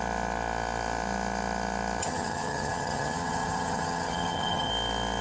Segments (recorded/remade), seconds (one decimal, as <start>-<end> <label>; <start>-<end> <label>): 0.0-2.0 recorded; 2.0-4.7 remade; 4.7-5.2 recorded